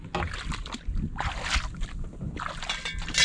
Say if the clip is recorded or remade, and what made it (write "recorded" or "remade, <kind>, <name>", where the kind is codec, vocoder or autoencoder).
recorded